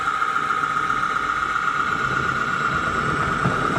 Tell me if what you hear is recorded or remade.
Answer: recorded